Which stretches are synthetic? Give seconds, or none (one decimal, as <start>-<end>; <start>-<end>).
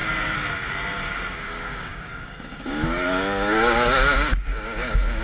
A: 1.3-5.2